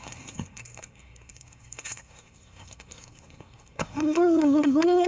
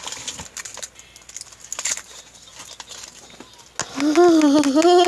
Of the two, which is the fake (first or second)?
first